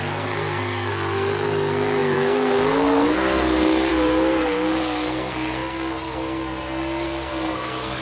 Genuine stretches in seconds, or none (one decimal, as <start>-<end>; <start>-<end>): none